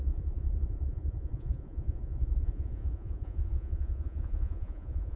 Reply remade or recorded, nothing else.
remade